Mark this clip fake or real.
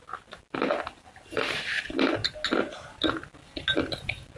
real